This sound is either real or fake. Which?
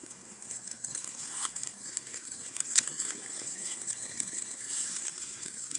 fake